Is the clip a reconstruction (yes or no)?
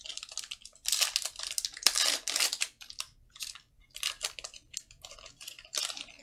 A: no